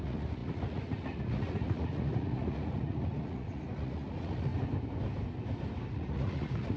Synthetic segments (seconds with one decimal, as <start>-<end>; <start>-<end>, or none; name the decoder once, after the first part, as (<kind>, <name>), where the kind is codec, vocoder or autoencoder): 0.0-4.5 (vocoder, Vocos); 5.9-6.8